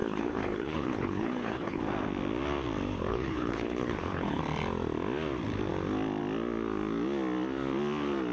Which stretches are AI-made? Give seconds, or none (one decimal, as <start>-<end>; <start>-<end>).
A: 0.0-1.8; 3.1-4.4